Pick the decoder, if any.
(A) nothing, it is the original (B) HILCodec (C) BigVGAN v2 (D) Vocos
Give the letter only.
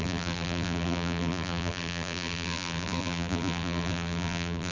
C